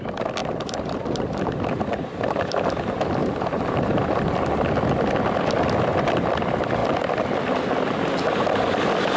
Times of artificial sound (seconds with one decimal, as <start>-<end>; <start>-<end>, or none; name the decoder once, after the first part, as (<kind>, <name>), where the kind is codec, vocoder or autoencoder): 0.4-2.6 (vocoder, BigVGAN v2); 3.2-4.0